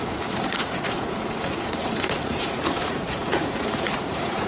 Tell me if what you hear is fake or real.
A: fake